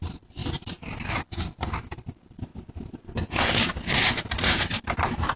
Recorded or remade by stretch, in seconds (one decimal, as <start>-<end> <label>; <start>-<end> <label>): 0.0-0.4 recorded; 0.4-1.2 remade; 1.2-5.4 recorded